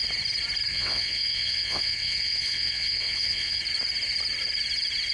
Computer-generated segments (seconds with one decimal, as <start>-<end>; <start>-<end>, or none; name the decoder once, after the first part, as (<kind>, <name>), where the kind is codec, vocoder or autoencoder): 0.7-3.6 (vocoder, WaveNeXt)